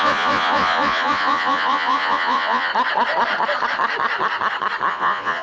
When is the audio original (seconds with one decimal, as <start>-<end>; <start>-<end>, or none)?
2.7-4.9